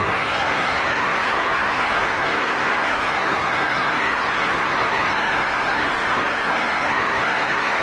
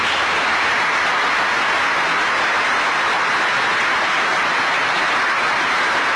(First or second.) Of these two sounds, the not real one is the first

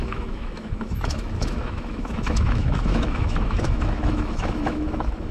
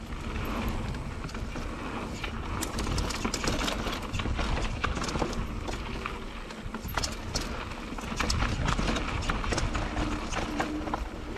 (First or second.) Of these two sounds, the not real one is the first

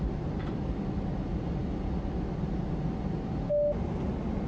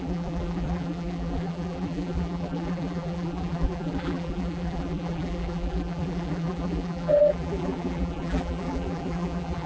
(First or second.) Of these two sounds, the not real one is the second